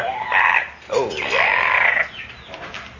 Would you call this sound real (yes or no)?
yes